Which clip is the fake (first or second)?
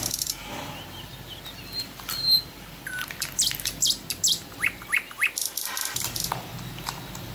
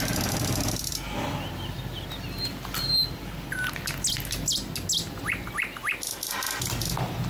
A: first